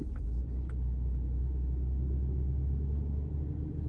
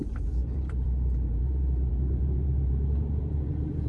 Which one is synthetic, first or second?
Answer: second